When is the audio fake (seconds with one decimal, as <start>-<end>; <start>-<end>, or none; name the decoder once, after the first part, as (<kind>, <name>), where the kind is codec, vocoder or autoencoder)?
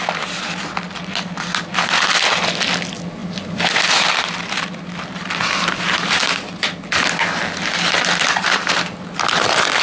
none